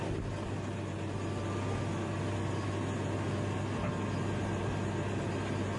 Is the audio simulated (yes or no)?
no